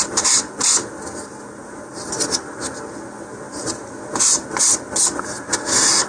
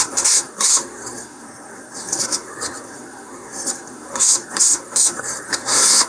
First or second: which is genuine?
first